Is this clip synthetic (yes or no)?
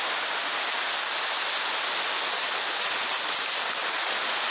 no